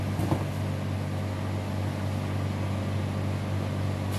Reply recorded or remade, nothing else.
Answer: recorded